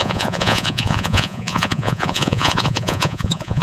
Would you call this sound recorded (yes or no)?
no